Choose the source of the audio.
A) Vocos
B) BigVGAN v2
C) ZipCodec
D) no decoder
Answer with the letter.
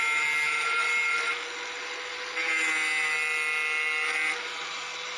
D